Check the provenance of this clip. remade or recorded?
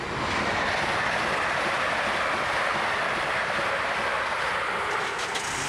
recorded